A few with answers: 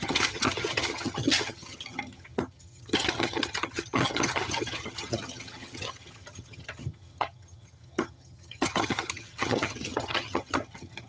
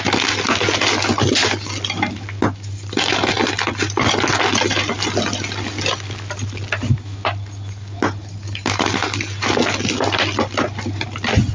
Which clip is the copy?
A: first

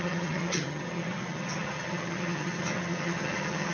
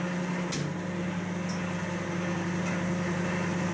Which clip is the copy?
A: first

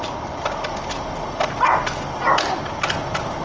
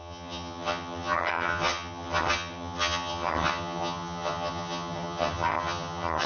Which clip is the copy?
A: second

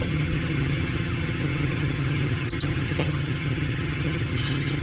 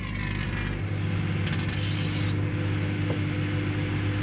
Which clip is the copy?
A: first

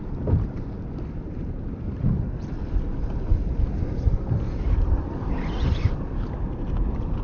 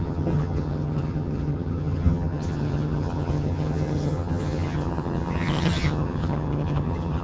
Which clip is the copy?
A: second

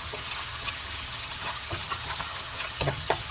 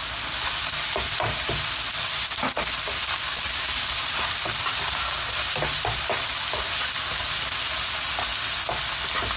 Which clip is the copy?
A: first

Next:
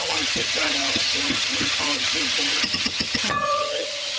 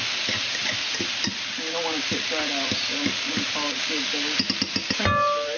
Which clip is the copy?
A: first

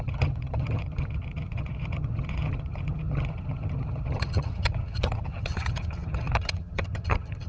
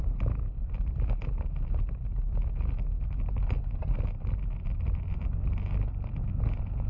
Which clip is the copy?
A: first